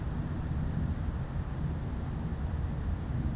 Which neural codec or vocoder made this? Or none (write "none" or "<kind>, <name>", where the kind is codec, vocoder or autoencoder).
none